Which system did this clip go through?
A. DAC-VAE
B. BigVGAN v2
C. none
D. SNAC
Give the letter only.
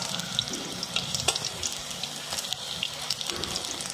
C